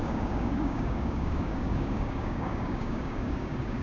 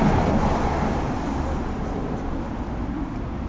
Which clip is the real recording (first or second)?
second